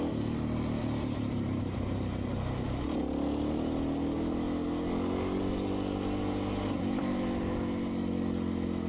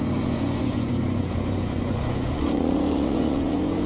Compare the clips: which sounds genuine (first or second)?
first